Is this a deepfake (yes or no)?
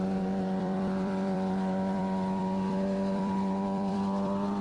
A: yes